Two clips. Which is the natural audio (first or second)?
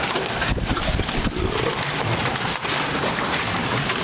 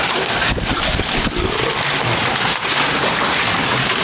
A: second